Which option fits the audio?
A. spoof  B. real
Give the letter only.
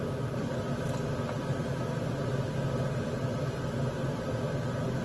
B